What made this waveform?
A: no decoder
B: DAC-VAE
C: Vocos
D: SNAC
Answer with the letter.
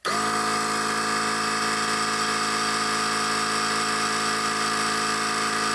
A